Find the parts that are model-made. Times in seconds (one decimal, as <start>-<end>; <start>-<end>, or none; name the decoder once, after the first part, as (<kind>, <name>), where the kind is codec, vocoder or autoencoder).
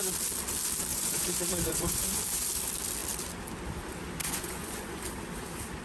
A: 0.9-2.2 (vocoder, Vocos); 4.2-5.0